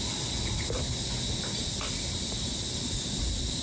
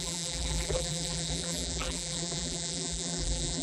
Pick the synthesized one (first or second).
second